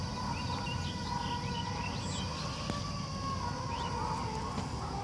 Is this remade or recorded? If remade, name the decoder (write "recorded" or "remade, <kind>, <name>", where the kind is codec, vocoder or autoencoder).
recorded